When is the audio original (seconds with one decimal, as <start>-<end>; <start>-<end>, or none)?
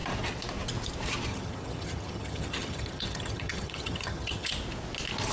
0.0-1.3; 4.5-5.3